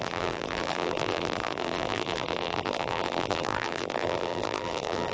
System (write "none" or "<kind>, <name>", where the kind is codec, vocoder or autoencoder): vocoder, BigVGAN v2